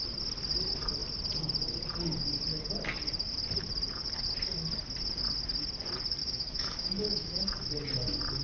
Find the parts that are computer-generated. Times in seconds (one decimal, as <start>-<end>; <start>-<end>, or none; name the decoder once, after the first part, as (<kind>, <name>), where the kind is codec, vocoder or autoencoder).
6.2-7.5 (autoencoder, DAC-VAE)